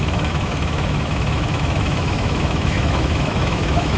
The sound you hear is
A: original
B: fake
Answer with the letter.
B